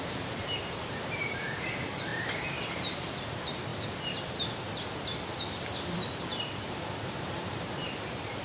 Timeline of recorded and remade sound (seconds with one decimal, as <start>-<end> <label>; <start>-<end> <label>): 0.0-3.7 remade; 3.7-6.4 recorded; 6.4-8.4 remade